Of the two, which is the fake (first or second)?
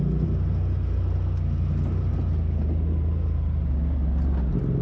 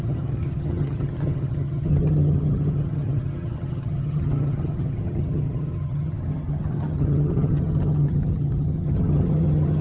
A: second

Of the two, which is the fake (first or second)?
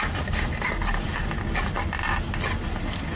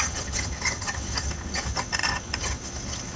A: second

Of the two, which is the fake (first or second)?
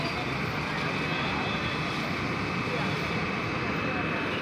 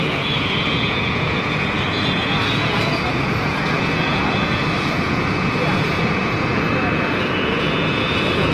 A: second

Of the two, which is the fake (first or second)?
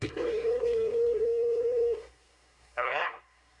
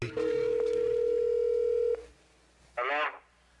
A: first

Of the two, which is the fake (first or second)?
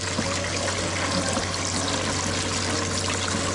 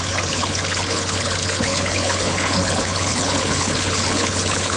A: second